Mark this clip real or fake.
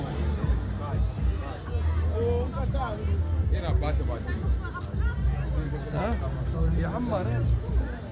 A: real